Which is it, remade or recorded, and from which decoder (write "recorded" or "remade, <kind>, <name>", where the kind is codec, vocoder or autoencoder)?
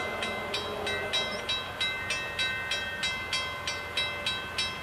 recorded